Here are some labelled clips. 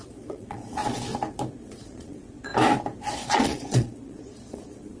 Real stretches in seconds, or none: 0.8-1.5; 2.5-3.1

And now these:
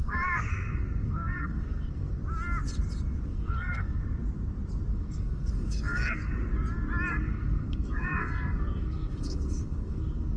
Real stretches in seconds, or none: 2.2-3.3; 4.0-4.9; 6.3-7.1

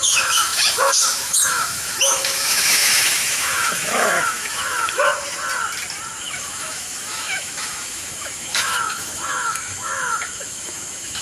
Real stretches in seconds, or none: 5.1-6.2

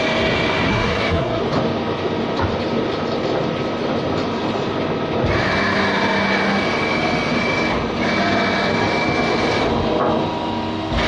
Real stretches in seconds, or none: 0.0-0.7; 1.4-11.1

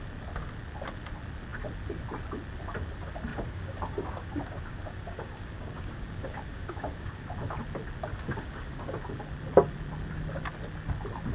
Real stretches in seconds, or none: 0.0-3.3; 7.3-8.1; 9.0-11.3

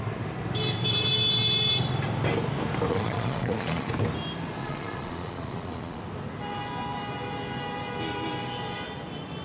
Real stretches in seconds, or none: 0.0-2.9; 3.9-4.6; 6.0-9.4

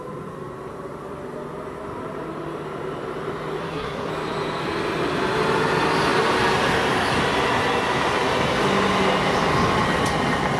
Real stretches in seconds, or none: 0.0-3.6; 4.1-10.6